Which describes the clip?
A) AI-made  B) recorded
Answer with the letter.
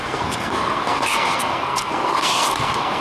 A